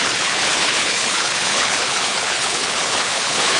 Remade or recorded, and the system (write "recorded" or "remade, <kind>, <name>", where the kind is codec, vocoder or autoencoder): remade, codec, HILCodec